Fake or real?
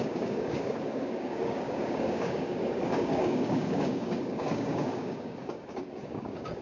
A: fake